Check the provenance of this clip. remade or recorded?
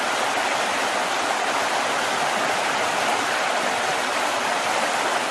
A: recorded